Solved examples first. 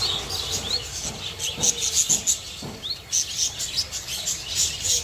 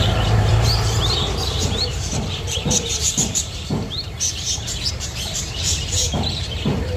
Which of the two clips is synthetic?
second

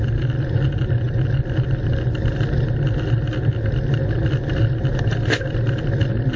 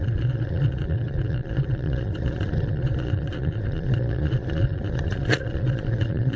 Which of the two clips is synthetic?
second